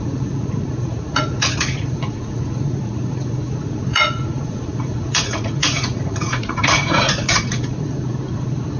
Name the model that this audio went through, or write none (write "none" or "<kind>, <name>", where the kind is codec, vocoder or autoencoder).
vocoder, Vocos